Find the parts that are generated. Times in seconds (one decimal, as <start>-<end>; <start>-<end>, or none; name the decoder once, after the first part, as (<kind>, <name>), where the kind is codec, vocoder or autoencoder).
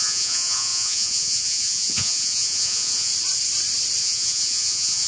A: 0.0-3.1 (vocoder, Vocos); 4.0-5.1